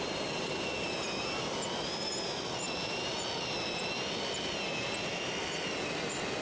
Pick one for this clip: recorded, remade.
recorded